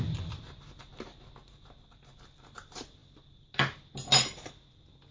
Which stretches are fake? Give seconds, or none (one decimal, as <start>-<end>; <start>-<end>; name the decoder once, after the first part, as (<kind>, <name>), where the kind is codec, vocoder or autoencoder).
none